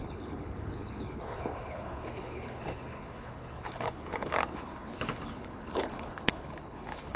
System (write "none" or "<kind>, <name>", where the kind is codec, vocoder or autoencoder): codec, HILCodec